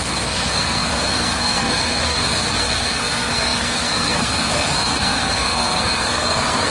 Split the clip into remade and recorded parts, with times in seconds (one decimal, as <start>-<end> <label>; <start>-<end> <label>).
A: 0.0-6.7 remade